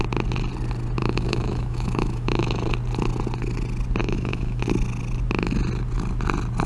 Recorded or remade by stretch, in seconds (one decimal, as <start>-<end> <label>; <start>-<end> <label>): 0.0-1.0 recorded; 1.0-2.6 remade; 2.6-4.0 recorded; 4.0-4.6 remade; 4.6-6.7 recorded